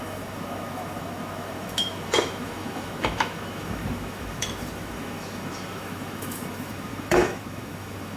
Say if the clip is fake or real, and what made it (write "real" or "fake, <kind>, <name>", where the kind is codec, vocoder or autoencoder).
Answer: fake, autoencoder, DAC-VAE